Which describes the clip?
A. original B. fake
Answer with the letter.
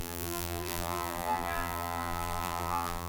B